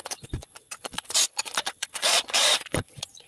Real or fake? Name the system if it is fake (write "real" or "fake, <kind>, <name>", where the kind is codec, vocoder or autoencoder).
fake, vocoder, Vocos